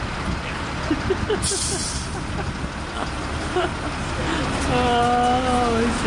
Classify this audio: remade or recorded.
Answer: recorded